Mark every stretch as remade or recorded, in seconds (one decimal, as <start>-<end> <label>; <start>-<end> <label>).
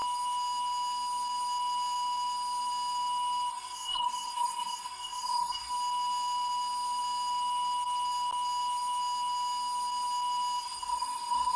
0.0-3.5 recorded; 3.5-5.7 remade; 5.7-10.6 recorded; 10.6-11.6 remade